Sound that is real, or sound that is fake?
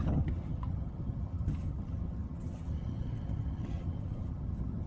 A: fake